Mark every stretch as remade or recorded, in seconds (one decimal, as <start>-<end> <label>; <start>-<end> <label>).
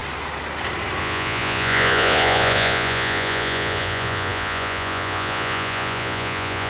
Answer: 0.0-1.0 recorded; 1.0-6.7 remade